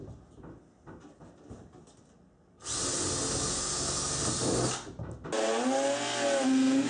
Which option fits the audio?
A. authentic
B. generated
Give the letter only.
A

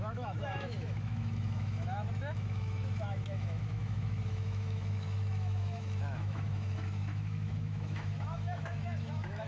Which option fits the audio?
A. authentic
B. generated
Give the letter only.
B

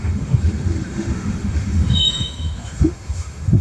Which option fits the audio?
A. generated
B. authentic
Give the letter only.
A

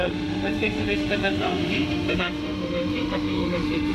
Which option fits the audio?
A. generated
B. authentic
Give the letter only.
A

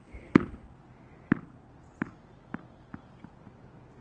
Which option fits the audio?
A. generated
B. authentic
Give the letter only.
B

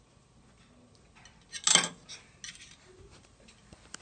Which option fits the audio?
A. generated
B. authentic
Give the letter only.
B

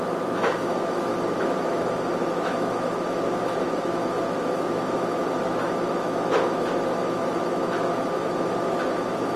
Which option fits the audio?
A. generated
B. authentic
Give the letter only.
A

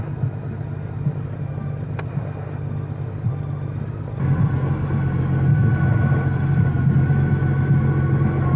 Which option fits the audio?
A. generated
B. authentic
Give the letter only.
B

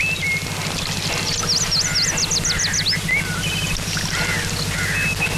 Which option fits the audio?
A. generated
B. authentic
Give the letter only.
B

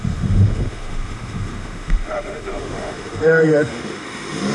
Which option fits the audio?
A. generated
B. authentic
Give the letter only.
A